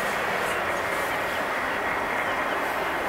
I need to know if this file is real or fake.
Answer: real